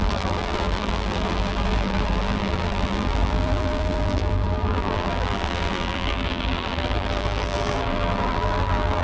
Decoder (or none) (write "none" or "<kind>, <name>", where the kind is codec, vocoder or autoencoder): vocoder, BigVGAN v2